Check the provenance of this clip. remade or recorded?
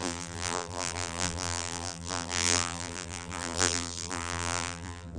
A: remade